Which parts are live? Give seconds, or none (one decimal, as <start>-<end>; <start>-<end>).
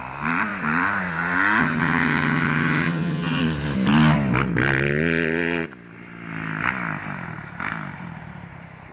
0.0-1.6; 3.4-8.9